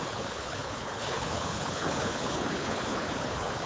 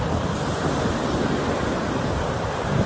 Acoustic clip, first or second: second